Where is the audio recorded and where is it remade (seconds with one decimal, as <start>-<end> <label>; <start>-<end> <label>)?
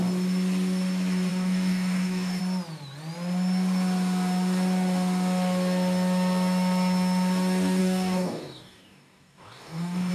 0.0-1.3 recorded; 1.3-2.4 remade; 2.4-7.8 recorded; 7.8-10.1 remade